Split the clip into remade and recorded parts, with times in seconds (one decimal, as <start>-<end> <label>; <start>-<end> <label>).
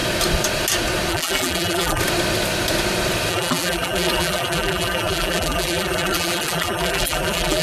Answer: 0.0-1.1 recorded; 1.1-2.0 remade; 2.0-3.3 recorded; 3.3-7.6 remade